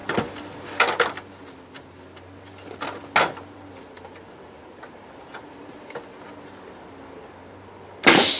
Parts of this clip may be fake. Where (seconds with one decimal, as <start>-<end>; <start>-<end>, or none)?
none